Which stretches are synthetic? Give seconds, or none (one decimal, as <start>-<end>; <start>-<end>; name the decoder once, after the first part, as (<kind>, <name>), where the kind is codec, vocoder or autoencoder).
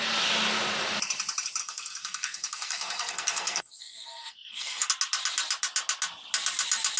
1.6-4.9 (codec, SNAC)